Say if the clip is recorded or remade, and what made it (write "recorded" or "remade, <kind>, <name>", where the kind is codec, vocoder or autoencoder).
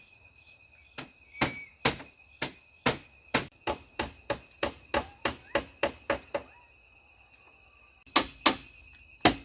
recorded